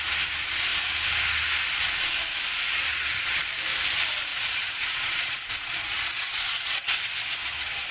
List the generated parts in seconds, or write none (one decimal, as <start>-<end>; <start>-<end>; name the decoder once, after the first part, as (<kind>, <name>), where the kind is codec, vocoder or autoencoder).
2.9-3.4 (vocoder, Vocos); 4.3-7.9